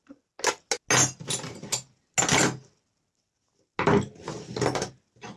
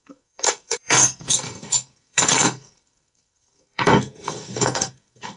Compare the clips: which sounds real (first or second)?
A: first